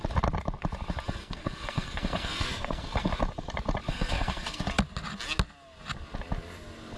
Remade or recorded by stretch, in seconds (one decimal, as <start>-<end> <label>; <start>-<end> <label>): 0.0-1.2 recorded; 1.2-3.1 remade; 3.1-3.9 recorded; 3.9-4.6 remade; 4.6-7.0 recorded